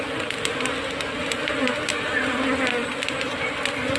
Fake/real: real